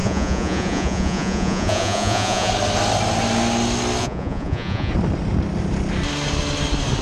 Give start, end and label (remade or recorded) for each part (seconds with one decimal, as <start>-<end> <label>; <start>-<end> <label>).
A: 0.0-2.5 remade; 2.5-4.0 recorded; 4.0-4.9 remade; 4.9-7.0 recorded